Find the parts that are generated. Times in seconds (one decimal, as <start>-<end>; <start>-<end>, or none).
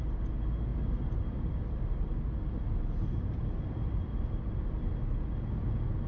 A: 0.7-4.4